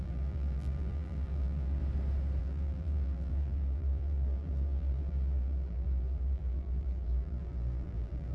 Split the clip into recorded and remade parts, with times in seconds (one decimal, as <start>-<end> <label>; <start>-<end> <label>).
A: 0.0-1.8 remade; 1.8-2.4 recorded; 2.4-8.3 remade